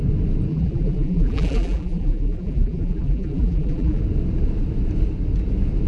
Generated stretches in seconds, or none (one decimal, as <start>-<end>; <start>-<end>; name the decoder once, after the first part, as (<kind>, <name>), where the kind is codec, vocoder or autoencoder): 0.5-4.0 (vocoder, BigVGAN v2)